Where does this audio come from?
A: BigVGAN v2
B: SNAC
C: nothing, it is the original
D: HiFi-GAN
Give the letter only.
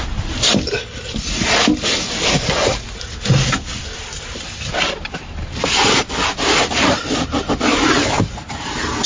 C